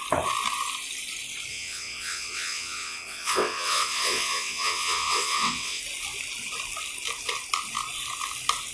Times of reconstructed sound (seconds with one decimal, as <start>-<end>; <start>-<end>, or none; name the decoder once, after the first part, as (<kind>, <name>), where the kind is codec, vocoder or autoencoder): 1.5-5.8 (vocoder, WaveNeXt)